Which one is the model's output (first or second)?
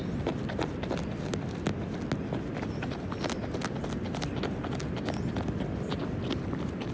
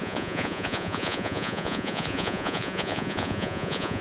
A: second